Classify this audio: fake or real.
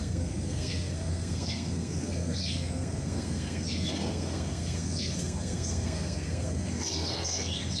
fake